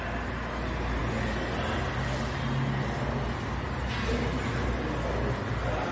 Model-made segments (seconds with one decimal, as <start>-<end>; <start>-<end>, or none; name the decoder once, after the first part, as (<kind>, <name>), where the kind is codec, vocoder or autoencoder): none